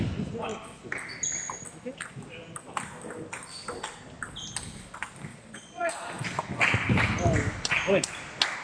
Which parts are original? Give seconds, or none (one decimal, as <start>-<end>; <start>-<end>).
0.0-5.3; 5.9-8.6